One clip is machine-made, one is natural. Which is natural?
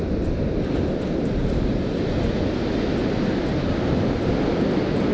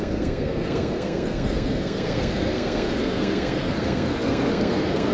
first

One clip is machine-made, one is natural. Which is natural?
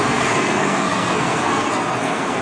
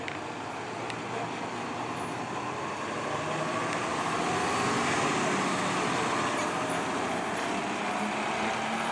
second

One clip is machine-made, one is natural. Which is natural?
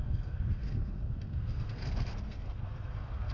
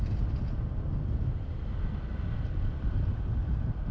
second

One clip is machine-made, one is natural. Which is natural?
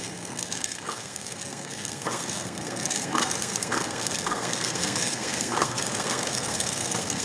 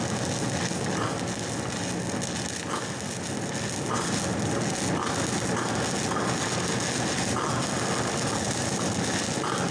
second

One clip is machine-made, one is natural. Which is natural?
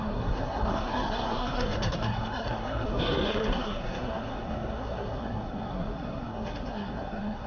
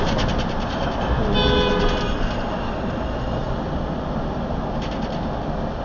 second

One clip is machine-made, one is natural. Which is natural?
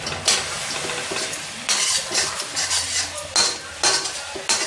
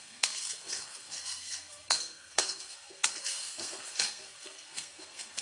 first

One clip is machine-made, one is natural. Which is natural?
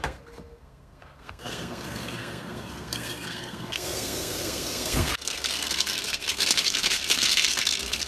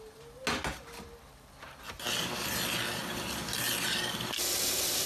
second